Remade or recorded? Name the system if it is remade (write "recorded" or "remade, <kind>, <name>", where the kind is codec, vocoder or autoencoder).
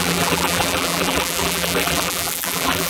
remade, vocoder, BigVGAN v2